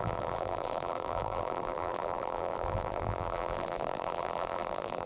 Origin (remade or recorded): remade